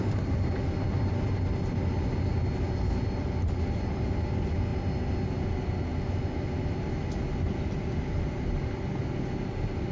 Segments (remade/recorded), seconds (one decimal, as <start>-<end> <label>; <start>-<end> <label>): 0.0-9.9 recorded